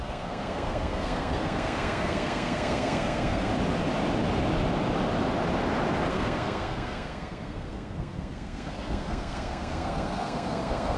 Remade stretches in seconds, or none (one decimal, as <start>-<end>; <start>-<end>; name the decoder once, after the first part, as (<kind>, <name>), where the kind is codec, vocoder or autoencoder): 0.0-3.5 (codec, SNAC); 6.1-11.0